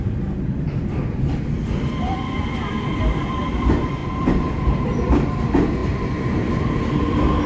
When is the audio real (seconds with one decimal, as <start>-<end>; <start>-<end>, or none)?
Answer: none